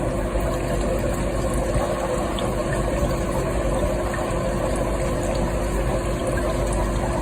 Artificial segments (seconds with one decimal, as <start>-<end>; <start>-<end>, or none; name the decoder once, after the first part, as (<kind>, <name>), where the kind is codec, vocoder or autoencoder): 2.6-3.2 (vocoder, BigVGAN v2)